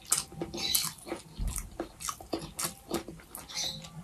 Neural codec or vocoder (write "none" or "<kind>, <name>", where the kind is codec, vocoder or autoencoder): none